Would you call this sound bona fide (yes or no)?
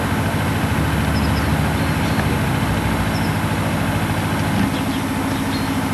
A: yes